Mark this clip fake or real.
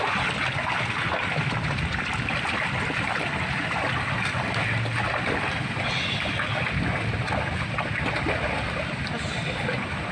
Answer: real